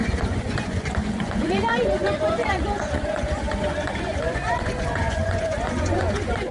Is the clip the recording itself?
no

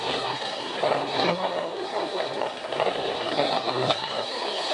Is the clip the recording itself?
no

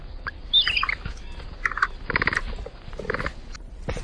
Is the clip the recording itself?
yes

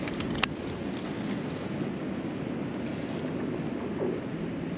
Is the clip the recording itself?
yes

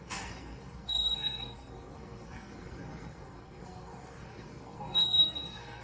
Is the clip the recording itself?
no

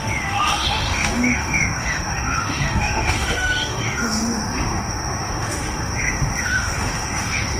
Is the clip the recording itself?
no